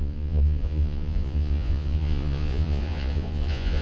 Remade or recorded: remade